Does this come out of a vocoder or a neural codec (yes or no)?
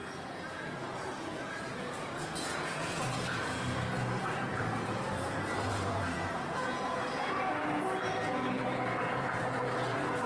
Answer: yes